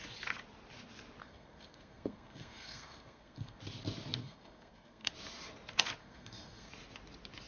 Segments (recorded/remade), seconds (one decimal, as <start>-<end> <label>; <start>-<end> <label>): 0.0-1.2 recorded; 1.2-3.6 remade; 3.6-4.2 recorded; 4.2-5.1 remade; 5.1-6.0 recorded; 6.0-6.7 remade; 6.7-7.5 recorded